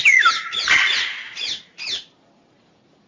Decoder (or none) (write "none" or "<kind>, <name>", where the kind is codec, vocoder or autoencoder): none